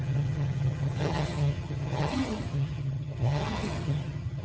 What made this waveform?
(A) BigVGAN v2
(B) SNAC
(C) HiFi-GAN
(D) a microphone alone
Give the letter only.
C